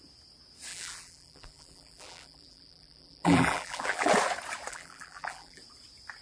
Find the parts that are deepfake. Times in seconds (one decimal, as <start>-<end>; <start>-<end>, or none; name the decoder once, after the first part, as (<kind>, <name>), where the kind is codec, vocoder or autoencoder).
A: 0.7-4.1 (vocoder, BigVGAN v2); 4.7-5.6

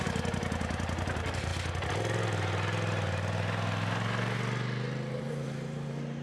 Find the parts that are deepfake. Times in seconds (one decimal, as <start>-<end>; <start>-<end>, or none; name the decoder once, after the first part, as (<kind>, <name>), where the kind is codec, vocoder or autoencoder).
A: 0.0-1.5 (vocoder, BigVGAN v2); 5.2-6.2

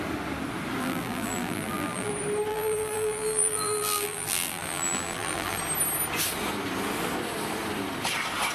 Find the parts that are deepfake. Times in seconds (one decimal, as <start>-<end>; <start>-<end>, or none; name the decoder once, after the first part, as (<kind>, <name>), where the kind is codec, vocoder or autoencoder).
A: 0.8-2.1 (vocoder, BigVGAN v2); 2.5-5.6

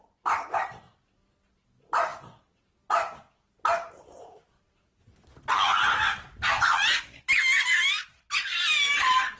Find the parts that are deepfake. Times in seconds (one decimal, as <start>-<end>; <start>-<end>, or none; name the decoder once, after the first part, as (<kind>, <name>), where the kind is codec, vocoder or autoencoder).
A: none

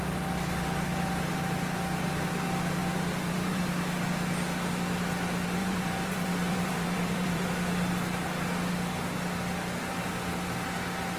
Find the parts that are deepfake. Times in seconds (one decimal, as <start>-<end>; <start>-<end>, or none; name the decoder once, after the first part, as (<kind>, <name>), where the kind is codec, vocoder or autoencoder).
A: 2.8-3.7 (vocoder, BigVGAN v2); 5.6-7.5

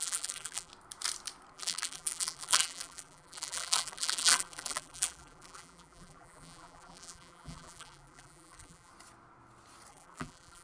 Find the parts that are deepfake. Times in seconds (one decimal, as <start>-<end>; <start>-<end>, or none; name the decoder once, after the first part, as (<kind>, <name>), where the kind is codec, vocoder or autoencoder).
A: 0.0-0.7 (vocoder, BigVGAN v2); 1.5-8.9; 9.9-10.6

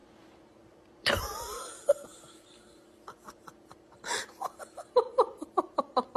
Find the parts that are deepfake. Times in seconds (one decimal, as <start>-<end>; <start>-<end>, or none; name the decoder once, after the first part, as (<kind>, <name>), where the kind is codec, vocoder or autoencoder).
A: 0.0-1.2 (vocoder, BigVGAN v2); 2.1-5.8

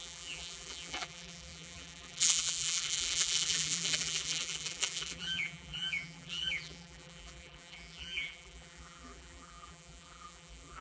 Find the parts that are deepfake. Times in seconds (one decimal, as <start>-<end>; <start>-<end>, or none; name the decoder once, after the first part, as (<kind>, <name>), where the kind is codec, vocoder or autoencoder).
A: 0.0-10.8 (vocoder, BigVGAN v2)